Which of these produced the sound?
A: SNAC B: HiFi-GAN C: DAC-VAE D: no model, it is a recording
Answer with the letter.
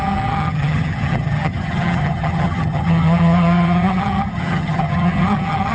B